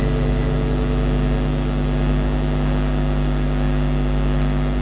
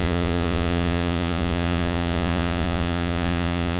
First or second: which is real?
first